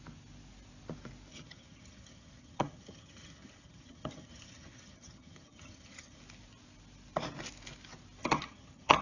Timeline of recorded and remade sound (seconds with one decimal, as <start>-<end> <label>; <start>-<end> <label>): 0.0-1.3 recorded; 1.3-6.2 remade; 6.2-8.2 recorded; 8.2-9.0 remade